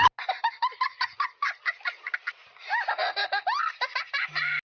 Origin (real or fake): real